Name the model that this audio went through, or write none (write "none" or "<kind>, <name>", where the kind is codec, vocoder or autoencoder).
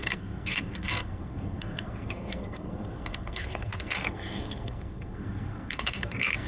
codec, SNAC